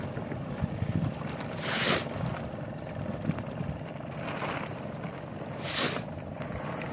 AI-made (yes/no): no